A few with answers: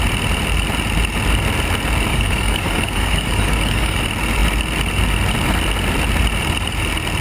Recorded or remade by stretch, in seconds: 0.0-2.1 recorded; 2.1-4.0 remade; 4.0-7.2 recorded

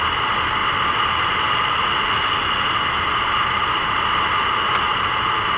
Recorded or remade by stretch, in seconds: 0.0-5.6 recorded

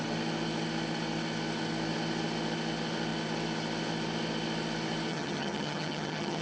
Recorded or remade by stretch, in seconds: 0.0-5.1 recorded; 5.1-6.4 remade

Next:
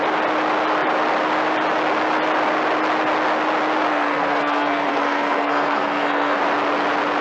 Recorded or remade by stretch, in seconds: 0.0-3.9 recorded; 3.9-6.4 remade; 6.4-7.2 recorded

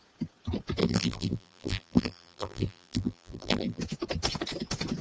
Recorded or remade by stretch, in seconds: 0.0-0.8 recorded; 0.8-3.8 remade; 3.8-5.0 recorded

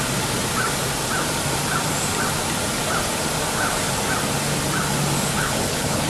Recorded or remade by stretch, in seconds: 0.0-5.3 recorded; 5.3-6.1 remade

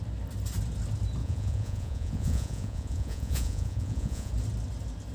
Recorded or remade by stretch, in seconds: 0.0-1.2 recorded; 1.2-4.3 remade; 4.3-5.1 recorded